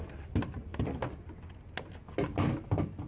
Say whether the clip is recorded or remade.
recorded